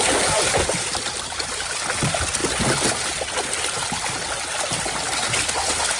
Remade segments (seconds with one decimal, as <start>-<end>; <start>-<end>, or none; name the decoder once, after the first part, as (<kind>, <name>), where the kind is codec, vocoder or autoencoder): none